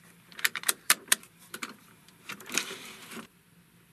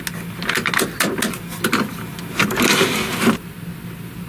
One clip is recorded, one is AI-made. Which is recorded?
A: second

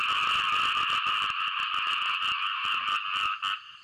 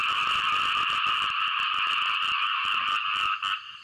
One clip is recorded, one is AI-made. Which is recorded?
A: first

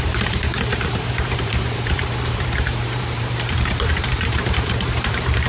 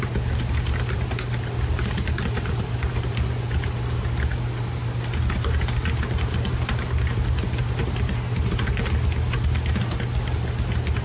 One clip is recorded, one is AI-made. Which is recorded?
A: second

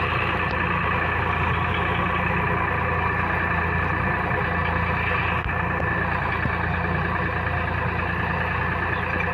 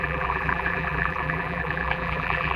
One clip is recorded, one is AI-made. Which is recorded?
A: first